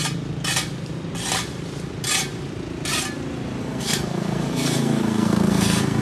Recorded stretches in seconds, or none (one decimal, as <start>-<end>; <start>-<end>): 0.0-3.6

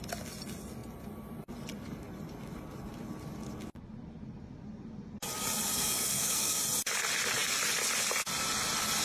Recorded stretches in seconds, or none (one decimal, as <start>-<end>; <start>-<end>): 0.0-5.7; 6.6-9.0